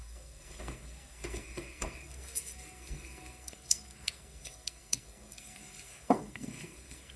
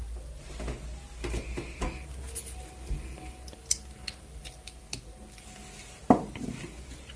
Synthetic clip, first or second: first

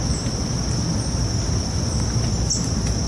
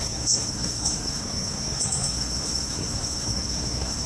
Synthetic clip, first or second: second